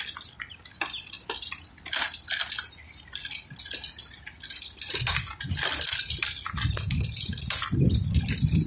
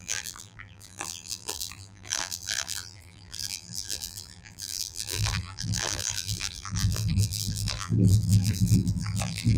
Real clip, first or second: first